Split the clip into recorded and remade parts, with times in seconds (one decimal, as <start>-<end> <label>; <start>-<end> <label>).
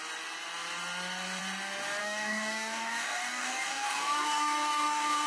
0.0-2.0 recorded; 2.0-5.3 remade